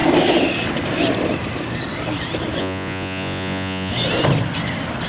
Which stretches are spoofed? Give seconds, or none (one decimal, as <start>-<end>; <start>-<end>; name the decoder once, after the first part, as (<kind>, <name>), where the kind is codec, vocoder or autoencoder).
2.6-3.9 (vocoder, Vocos)